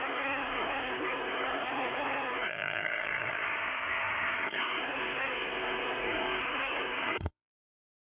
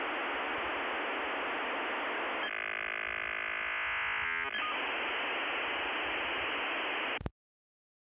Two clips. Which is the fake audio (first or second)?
first